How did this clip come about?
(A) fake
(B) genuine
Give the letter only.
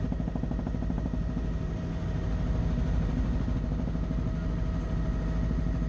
B